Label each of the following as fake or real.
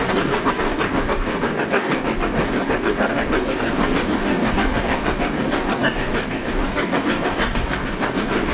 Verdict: fake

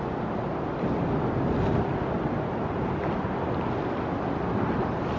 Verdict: real